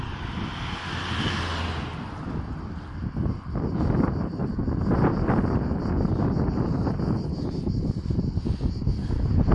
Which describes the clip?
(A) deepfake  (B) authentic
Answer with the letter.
B